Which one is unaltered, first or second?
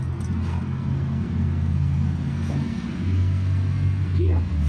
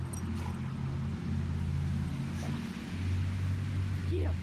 second